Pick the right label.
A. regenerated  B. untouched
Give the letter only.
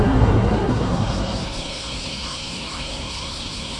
A